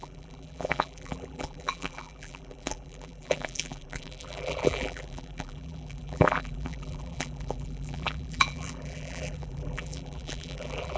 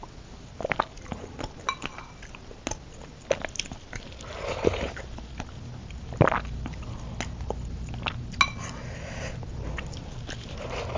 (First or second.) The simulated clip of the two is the first